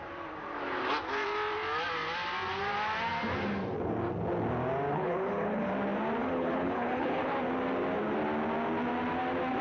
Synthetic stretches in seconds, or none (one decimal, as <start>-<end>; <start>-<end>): 4.9-5.7; 6.2-7.3